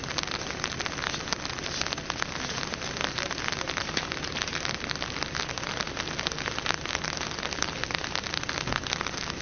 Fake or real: real